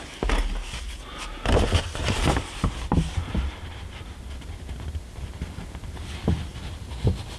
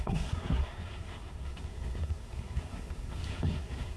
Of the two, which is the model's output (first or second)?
second